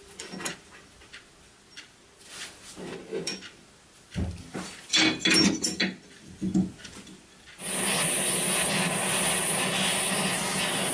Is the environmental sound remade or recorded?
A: recorded